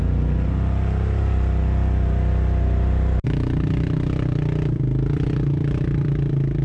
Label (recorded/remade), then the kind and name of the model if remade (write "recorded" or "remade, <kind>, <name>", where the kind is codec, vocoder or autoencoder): recorded